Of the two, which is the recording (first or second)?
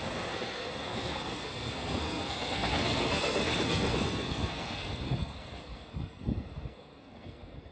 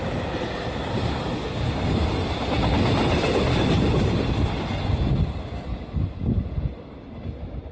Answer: second